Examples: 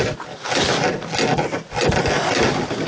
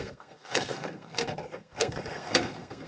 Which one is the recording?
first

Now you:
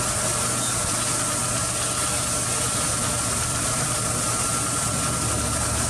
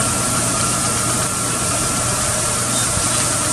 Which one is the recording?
first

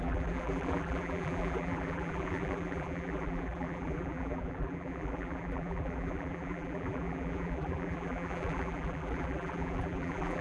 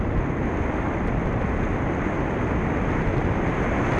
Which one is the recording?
second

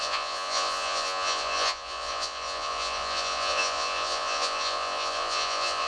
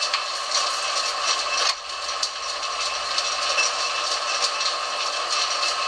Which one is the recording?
second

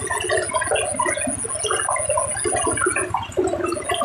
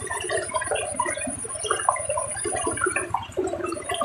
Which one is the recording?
first